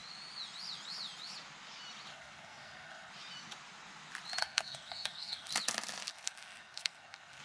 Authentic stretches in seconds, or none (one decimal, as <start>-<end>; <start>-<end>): 0.0-2.1; 3.1-4.4; 5.5-6.1